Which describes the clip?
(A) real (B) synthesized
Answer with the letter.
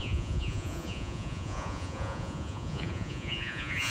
B